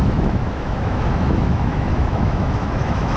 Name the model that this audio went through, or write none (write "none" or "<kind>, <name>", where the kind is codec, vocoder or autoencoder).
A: autoencoder, DAC-VAE